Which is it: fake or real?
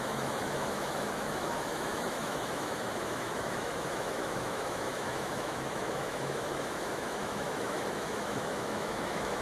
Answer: fake